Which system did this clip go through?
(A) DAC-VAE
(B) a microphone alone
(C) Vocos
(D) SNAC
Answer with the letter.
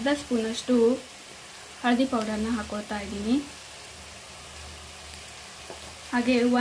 B